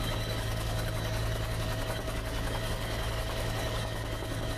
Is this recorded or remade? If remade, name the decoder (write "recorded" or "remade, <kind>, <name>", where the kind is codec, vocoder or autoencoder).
remade, codec, DAC